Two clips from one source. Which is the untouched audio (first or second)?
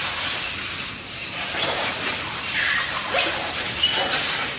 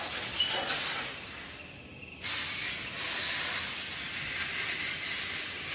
second